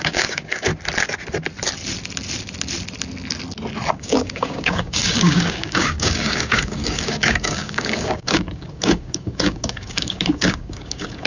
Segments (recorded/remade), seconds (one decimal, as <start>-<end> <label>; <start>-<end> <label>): 0.0-0.7 remade; 0.7-3.9 recorded; 3.9-11.3 remade